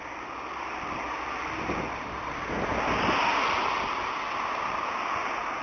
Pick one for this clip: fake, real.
real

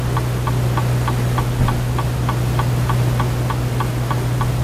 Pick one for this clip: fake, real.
real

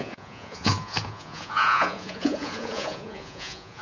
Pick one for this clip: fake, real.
fake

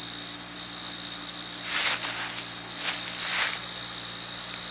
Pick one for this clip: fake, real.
real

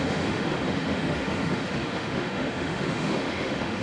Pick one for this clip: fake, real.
fake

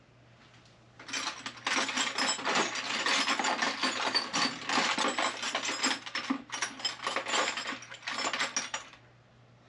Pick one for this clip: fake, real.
real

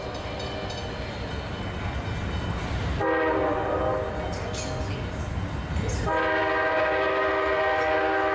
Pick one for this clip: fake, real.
real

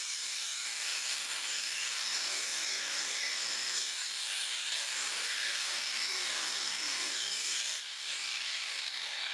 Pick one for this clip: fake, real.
fake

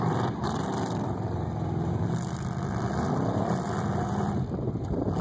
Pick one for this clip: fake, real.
fake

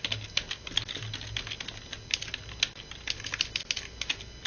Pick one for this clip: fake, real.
real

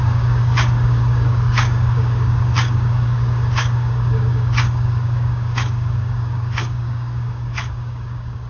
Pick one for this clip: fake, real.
fake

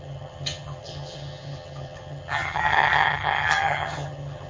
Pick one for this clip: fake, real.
fake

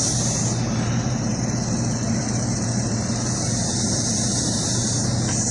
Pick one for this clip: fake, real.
fake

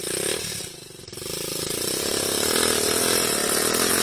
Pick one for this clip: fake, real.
real